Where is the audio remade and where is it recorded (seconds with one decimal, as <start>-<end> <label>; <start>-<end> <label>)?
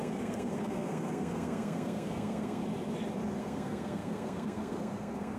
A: 0.0-2.6 remade; 2.6-3.4 recorded; 3.4-5.4 remade